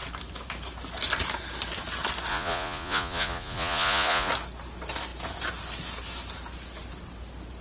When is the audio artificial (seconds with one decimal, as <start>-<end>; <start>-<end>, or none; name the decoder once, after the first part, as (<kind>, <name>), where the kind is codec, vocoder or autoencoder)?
2.3-4.3 (vocoder, Vocos)